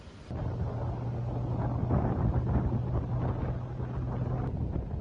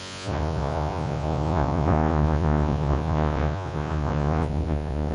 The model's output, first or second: second